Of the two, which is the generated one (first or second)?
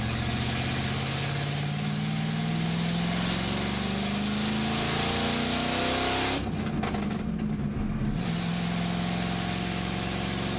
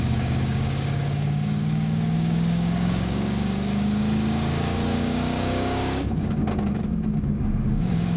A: second